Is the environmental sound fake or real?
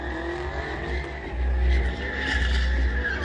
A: real